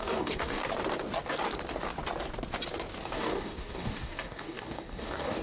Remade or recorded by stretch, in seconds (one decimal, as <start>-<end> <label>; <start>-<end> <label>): 0.0-0.6 remade; 0.6-3.0 recorded; 3.0-5.4 remade